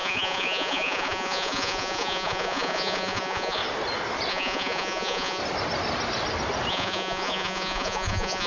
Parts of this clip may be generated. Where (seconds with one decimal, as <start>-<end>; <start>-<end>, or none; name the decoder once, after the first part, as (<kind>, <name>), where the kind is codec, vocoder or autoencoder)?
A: 0.0-3.6 (vocoder, Vocos); 4.3-5.4; 6.7-8.5